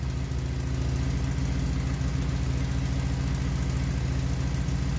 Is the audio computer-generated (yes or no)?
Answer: no